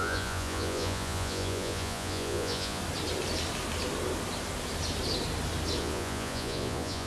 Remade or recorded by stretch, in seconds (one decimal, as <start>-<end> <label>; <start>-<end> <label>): 0.0-2.8 remade; 2.8-5.8 recorded; 5.8-7.1 remade